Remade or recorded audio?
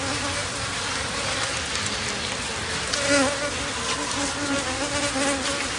recorded